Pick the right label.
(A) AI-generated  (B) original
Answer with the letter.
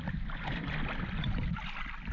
B